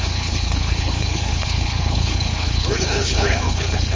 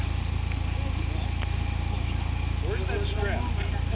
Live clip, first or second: second